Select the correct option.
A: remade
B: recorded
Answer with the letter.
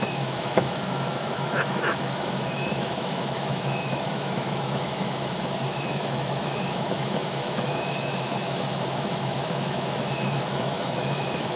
A